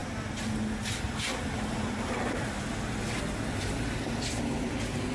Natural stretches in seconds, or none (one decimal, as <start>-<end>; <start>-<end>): 0.0-5.1